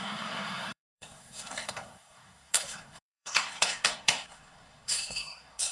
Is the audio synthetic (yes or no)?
yes